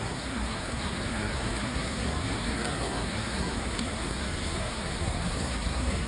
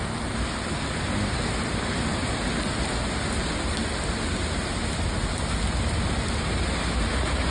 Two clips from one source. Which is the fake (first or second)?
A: first